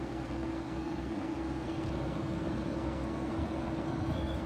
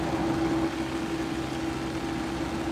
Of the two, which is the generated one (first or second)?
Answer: first